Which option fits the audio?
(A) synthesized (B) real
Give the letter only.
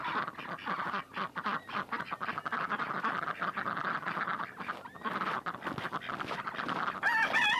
B